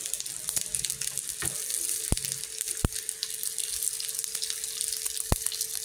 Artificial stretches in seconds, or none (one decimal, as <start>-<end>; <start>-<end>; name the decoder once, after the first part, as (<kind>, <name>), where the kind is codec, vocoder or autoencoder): none